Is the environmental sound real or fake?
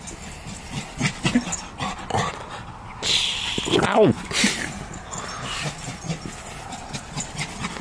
real